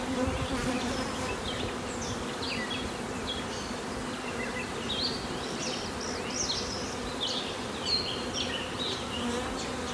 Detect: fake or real real